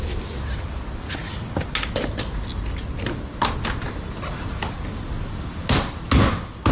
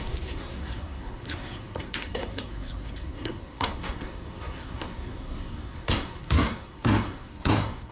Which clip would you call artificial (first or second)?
second